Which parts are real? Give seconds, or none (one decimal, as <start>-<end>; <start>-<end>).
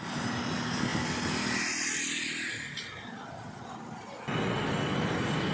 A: 0.0-5.5